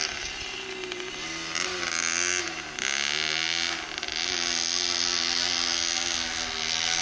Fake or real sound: real